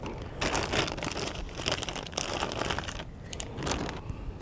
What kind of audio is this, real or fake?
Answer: real